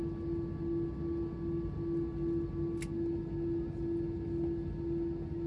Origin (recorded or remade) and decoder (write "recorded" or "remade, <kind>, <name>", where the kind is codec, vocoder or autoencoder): recorded